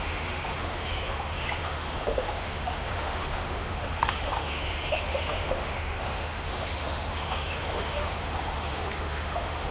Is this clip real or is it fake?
fake